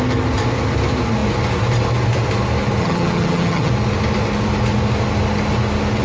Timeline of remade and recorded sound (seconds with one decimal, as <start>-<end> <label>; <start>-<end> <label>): 0.0-2.8 recorded; 2.8-3.7 remade; 3.7-6.0 recorded